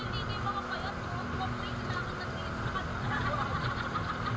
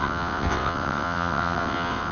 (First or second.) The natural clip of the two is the first